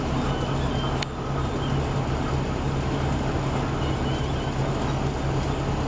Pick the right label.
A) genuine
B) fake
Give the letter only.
A